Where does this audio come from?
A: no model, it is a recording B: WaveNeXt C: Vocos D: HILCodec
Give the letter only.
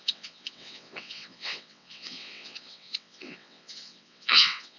B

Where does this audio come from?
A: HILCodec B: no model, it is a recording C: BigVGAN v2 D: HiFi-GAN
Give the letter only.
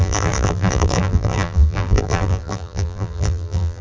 C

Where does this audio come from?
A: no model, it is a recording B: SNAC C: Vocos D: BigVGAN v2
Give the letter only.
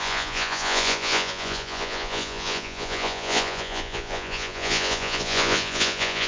C